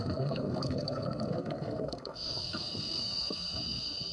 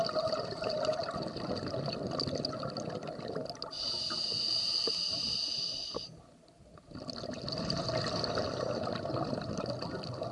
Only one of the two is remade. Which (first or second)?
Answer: first